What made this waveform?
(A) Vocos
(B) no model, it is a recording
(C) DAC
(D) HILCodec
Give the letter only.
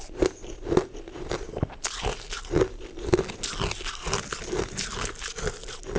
B